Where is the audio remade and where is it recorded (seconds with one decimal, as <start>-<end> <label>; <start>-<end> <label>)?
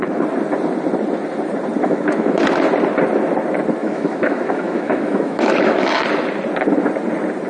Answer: 0.0-1.8 recorded; 1.8-2.4 remade; 2.4-3.8 recorded; 3.8-5.9 remade; 5.9-7.5 recorded